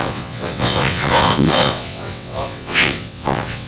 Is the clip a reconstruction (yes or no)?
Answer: yes